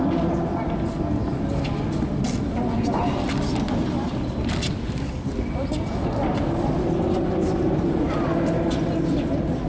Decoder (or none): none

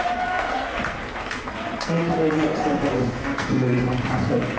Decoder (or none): codec, SNAC